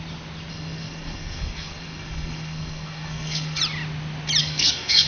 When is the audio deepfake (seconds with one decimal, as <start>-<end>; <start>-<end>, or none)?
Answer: 0.5-3.6; 4.4-5.1